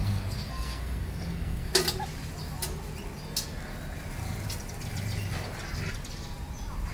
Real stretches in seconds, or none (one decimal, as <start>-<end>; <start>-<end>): 1.7-6.9

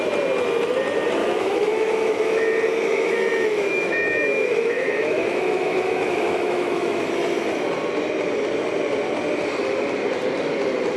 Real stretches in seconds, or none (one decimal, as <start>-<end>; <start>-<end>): 0.0-1.2; 2.5-2.9; 7.0-11.0